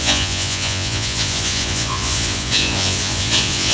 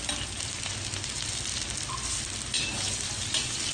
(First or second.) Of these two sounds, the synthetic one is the first